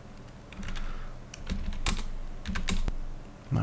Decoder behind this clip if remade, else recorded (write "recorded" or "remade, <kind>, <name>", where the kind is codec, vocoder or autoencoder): recorded